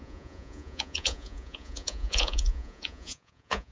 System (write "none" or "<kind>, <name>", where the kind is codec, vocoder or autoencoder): vocoder, Vocos